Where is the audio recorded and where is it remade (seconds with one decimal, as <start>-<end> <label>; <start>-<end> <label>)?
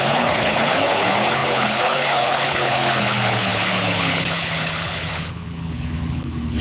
0.0-6.6 remade